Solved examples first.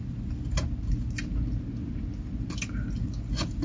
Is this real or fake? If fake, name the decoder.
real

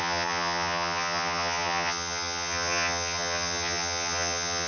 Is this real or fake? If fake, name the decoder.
fake, vocoder, HiFi-GAN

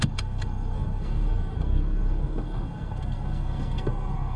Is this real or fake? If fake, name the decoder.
fake, codec, SNAC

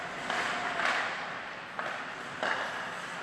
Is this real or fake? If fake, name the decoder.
real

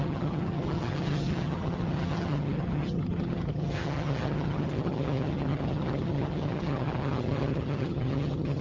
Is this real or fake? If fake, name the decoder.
fake, vocoder, HiFi-GAN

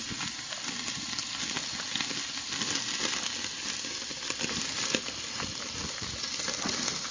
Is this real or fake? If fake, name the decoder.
real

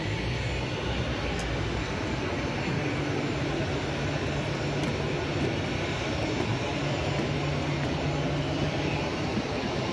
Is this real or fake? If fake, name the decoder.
real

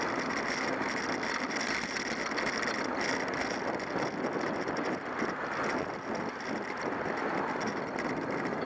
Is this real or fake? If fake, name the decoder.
real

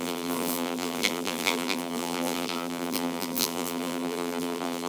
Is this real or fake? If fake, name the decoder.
fake, vocoder, BigVGAN v2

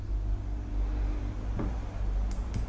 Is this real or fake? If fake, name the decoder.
real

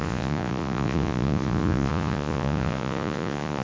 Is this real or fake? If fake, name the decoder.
fake, vocoder, Vocos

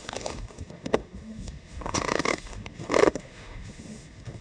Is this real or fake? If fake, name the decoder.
fake, autoencoder, DAC-VAE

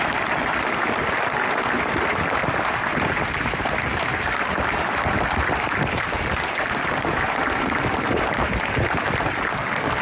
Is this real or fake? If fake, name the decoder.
fake, vocoder, BigVGAN v2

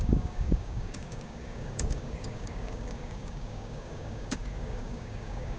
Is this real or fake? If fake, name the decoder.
fake, codec, DAC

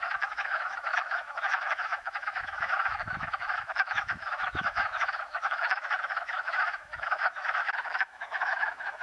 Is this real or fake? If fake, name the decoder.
fake, autoencoder, DAC-VAE